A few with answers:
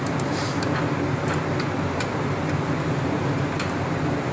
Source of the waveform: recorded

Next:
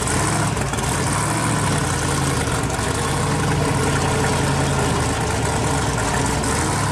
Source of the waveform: recorded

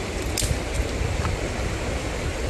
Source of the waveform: recorded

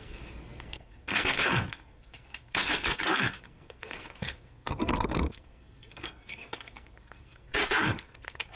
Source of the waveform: remade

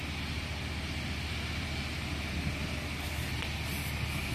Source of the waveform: recorded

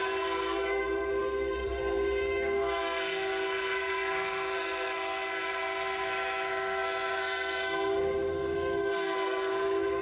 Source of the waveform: remade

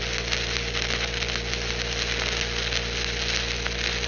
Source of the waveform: recorded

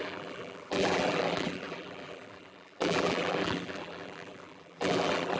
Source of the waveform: remade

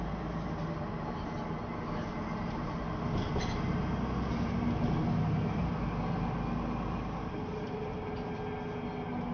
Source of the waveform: recorded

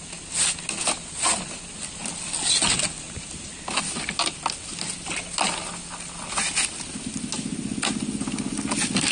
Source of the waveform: recorded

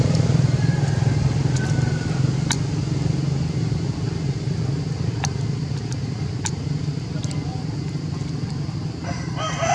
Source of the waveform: recorded